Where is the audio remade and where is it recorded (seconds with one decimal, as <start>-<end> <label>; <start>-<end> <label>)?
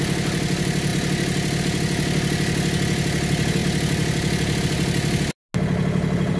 0.0-6.4 recorded